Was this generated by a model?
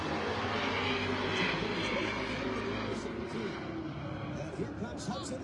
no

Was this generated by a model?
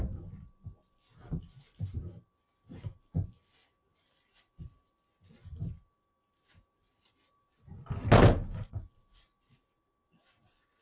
no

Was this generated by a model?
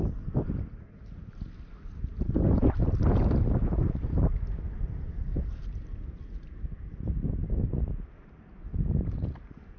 no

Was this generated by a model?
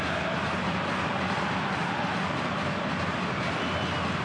no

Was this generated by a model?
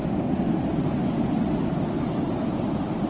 no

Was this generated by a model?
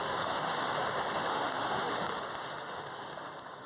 yes